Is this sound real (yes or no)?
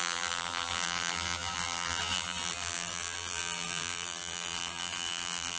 no